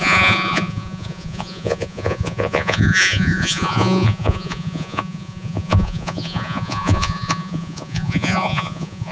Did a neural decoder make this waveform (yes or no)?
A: yes